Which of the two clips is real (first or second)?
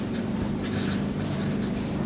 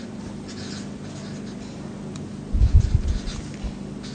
second